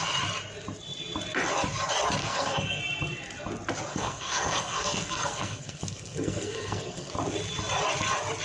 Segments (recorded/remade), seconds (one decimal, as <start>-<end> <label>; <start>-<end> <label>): 0.0-2.2 recorded; 2.2-2.8 remade; 2.8-3.9 recorded; 3.9-7.1 remade; 7.1-8.4 recorded